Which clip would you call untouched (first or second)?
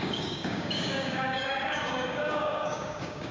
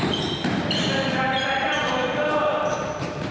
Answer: second